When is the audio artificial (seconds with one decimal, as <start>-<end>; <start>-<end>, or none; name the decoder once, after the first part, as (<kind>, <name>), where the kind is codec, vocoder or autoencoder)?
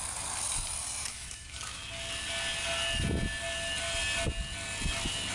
1.0-1.8 (autoencoder, DAC-VAE)